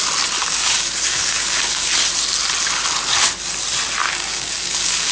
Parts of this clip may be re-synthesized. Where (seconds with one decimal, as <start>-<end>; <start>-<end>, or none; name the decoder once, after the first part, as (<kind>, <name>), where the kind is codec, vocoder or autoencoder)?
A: 0.4-1.9 (codec, DAC); 4.0-5.1